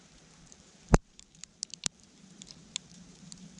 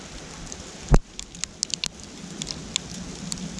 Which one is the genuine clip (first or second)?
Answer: second